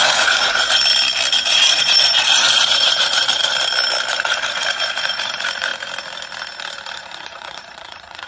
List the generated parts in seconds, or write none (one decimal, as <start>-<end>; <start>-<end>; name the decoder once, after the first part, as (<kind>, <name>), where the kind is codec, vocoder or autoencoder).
0.0-0.8 (vocoder, Vocos); 1.4-3.5; 4.1-5.7; 6.9-8.3